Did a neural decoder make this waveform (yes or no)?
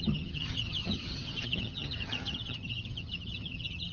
yes